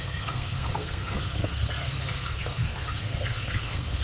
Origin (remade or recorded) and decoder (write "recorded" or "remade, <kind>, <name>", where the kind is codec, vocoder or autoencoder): remade, codec, SNAC